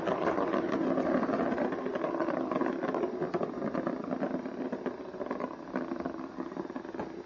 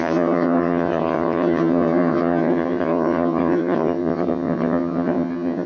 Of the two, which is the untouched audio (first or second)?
first